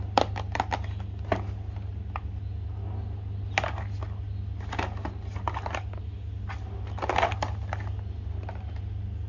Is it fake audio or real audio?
real